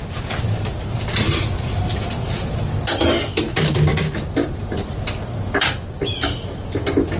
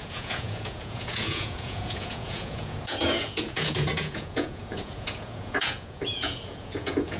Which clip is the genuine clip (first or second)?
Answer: first